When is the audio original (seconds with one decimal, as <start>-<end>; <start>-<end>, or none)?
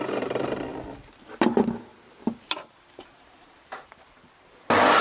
0.0-1.9; 4.3-5.0